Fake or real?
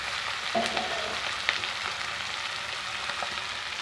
real